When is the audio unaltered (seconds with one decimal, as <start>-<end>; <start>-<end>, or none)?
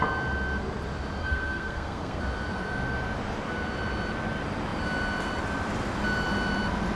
0.0-1.2; 2.2-7.0